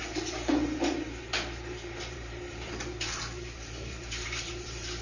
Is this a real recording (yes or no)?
no